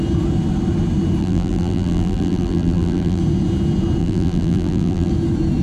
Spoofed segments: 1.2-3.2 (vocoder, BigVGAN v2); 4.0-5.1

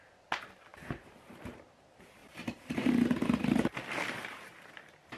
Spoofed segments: 2.2-3.7 (vocoder, BigVGAN v2)

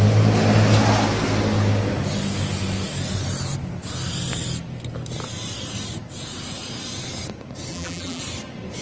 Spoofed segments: 7.7-8.2 (vocoder, BigVGAN v2)

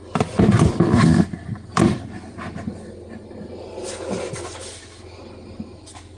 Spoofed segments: none